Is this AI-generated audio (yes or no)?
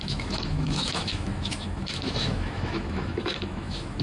yes